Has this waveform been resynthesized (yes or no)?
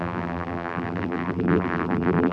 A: yes